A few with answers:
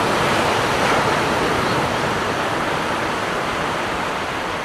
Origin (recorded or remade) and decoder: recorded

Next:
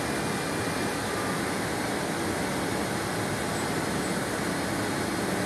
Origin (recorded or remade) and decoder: recorded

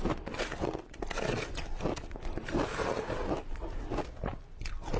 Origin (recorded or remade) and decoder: recorded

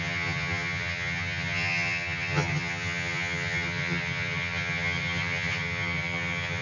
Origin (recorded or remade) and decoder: remade, vocoder, HiFi-GAN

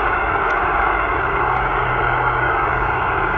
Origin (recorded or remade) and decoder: remade, codec, DAC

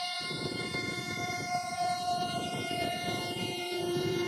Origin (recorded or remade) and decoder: remade, vocoder, Vocos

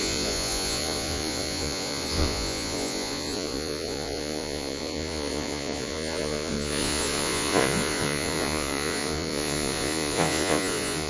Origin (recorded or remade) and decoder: remade, vocoder, Vocos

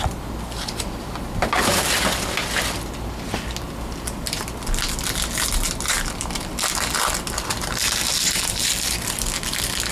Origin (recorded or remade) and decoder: recorded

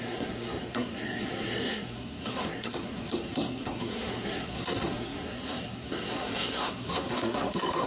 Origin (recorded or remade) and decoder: remade, codec, SNAC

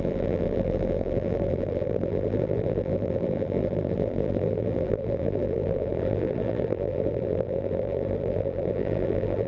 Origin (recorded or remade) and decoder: remade, vocoder, BigVGAN v2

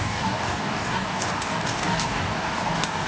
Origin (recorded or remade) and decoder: remade, codec, DAC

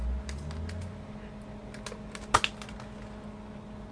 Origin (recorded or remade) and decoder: recorded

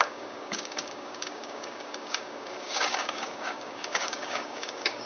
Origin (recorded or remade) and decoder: remade, codec, DAC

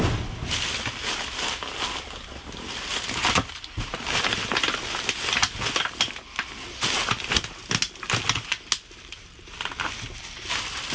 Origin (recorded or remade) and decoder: recorded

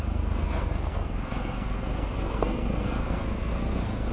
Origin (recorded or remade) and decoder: remade, codec, SNAC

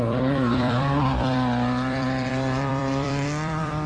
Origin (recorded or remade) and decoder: remade, vocoder, BigVGAN v2